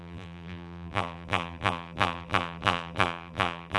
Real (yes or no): no